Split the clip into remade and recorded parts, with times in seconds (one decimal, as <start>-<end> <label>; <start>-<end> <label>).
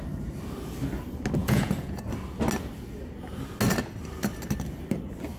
0.0-1.4 recorded; 1.4-2.0 remade; 2.0-5.4 recorded